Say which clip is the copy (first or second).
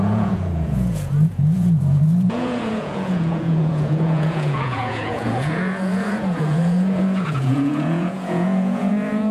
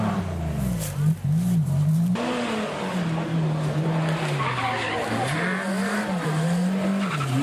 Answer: first